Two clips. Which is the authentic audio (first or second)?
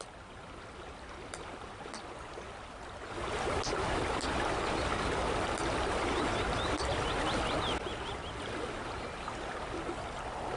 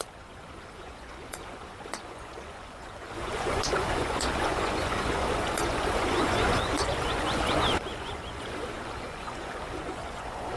first